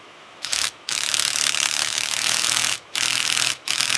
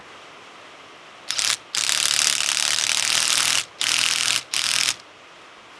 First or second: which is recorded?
second